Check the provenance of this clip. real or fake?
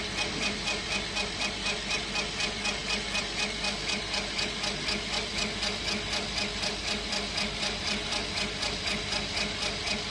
real